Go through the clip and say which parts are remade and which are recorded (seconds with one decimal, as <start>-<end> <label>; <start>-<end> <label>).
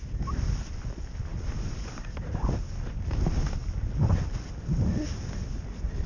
0.0-6.1 recorded